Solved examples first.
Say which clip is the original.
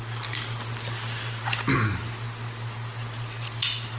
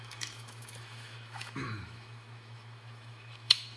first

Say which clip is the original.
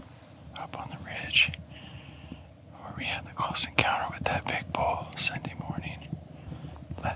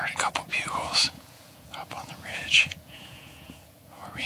first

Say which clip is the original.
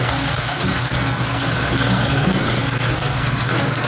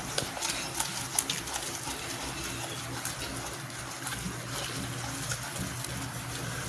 second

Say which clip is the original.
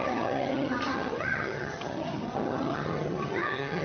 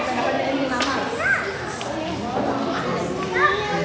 second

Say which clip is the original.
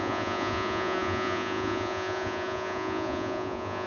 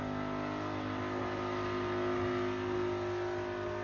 second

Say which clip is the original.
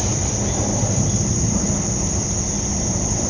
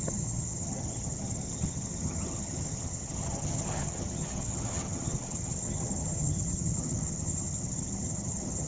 first